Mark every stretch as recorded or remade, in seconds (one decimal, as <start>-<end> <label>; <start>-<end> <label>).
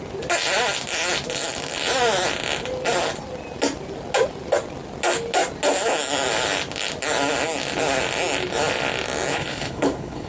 0.0-9.3 recorded; 9.3-10.3 remade